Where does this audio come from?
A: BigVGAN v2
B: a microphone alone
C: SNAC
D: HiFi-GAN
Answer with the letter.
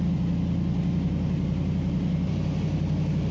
B